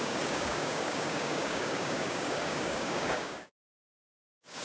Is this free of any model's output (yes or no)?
no